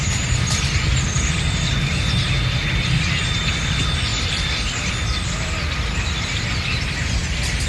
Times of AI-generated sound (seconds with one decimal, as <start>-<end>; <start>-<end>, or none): 4.1-4.9